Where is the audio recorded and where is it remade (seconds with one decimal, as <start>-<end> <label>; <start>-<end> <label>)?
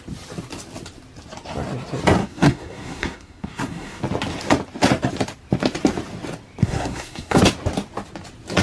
0.0-2.2 recorded; 2.2-4.0 remade; 4.0-6.6 recorded; 6.6-7.4 remade; 7.4-8.6 recorded